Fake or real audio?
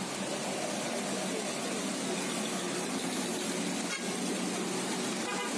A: real